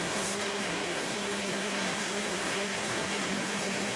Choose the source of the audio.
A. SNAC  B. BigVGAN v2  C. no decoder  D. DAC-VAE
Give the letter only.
A